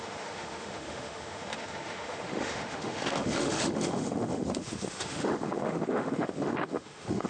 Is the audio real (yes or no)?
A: no